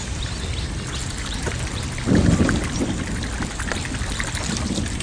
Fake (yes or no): no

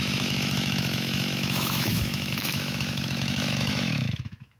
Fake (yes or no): yes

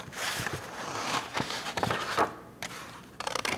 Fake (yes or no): yes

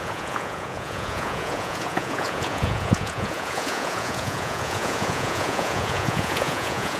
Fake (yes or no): yes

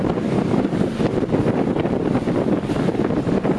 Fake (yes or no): no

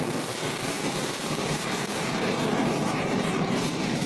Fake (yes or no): yes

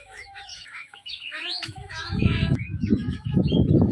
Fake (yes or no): yes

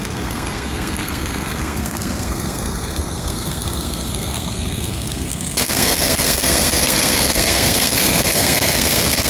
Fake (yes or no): yes